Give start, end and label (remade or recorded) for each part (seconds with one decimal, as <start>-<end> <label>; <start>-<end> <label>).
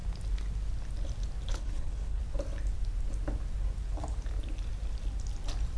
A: 0.0-1.5 recorded; 1.5-2.2 remade; 2.2-5.8 recorded